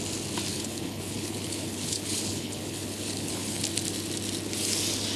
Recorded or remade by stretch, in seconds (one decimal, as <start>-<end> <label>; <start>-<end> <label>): 0.0-0.5 recorded; 0.5-3.6 remade; 3.6-5.2 recorded